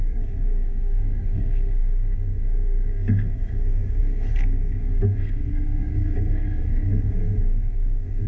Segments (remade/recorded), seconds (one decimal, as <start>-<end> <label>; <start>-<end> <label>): 0.0-8.3 remade